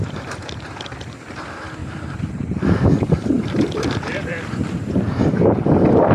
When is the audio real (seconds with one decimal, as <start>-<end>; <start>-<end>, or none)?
0.0-6.1